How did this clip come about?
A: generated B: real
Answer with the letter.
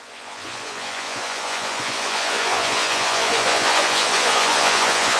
A